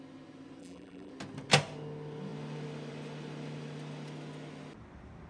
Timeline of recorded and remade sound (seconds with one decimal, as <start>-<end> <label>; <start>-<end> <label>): 0.0-0.6 recorded; 0.6-1.1 remade; 1.1-5.3 recorded